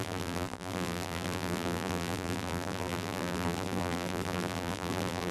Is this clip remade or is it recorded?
remade